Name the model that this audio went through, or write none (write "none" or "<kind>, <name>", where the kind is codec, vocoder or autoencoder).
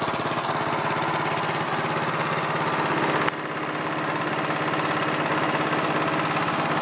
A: none